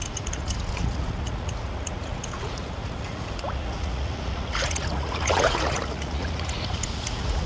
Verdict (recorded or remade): remade